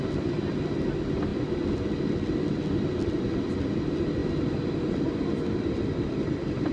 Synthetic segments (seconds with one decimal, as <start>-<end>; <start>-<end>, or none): 4.2-6.7